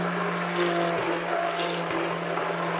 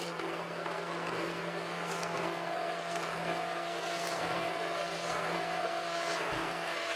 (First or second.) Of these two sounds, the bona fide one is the first